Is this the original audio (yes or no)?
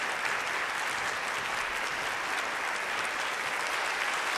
yes